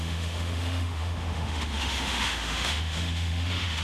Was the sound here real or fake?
fake